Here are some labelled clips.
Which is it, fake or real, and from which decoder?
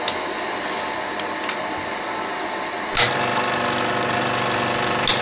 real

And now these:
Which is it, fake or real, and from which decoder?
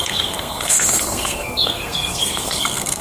fake, codec, SNAC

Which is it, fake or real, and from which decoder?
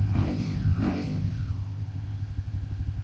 fake, codec, ZipCodec